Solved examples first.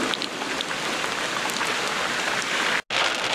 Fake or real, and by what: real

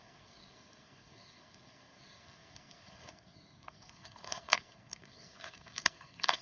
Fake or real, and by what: fake, codec, SNAC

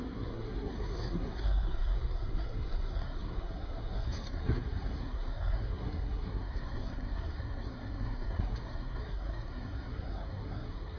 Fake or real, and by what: fake, codec, SNAC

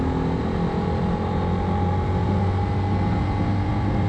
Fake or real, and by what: real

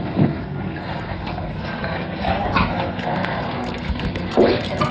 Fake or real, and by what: fake, codec, SNAC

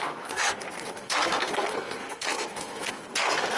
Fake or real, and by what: fake, codec, SNAC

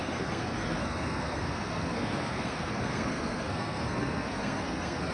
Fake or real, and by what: fake, codec, SNAC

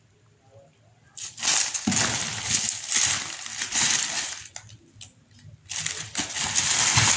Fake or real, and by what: real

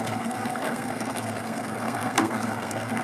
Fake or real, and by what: fake, codec, SNAC